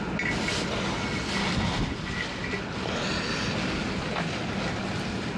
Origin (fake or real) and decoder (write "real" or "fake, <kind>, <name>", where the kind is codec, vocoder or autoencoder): real